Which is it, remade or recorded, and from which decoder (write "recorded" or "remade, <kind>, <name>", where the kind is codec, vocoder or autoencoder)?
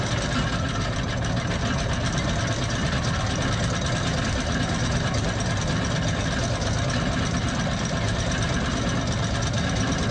recorded